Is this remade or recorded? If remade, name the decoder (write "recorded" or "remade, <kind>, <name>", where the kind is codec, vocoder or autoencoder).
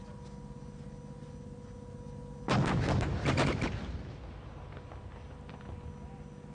recorded